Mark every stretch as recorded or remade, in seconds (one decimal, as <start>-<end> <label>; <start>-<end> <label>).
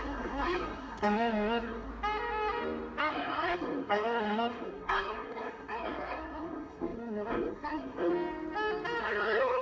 0.0-1.9 remade; 1.9-3.0 recorded; 3.0-8.1 remade; 8.1-9.0 recorded; 9.0-9.6 remade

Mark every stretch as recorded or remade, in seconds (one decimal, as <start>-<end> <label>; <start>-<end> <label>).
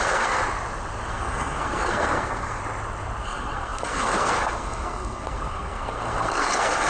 0.0-0.4 remade; 0.4-1.1 recorded; 1.1-2.6 remade; 2.6-3.2 recorded; 3.2-6.9 remade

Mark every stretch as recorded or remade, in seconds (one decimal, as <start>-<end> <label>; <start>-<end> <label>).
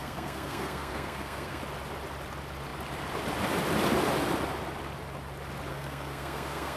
0.0-1.6 remade; 1.6-5.7 recorded; 5.7-6.8 remade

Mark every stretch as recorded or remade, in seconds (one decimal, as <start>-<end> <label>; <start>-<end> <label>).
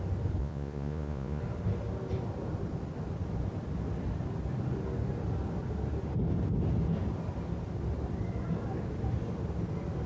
0.0-0.4 recorded; 0.4-1.4 remade; 1.4-10.1 recorded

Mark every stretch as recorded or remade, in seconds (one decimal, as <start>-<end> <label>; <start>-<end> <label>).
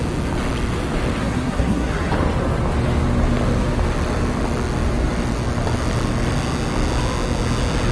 0.0-1.2 recorded; 1.2-2.1 remade; 2.1-7.9 recorded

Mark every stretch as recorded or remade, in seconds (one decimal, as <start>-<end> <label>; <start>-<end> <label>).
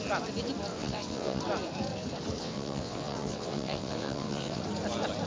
0.0-0.7 recorded; 0.7-1.4 remade; 1.4-2.4 recorded; 2.4-4.6 remade; 4.6-5.3 recorded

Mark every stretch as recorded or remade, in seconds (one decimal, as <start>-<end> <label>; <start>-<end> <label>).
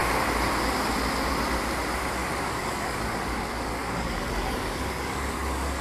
0.0-2.2 recorded; 2.2-5.8 remade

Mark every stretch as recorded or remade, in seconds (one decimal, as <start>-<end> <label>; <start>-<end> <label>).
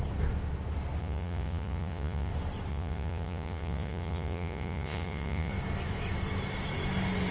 0.0-1.0 recorded; 1.0-2.3 remade; 2.3-2.7 recorded; 2.7-5.5 remade; 5.5-7.3 recorded